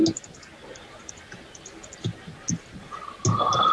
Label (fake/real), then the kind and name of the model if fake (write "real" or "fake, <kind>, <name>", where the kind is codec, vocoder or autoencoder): real